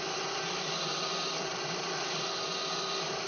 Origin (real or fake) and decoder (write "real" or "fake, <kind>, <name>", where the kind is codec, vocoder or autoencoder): real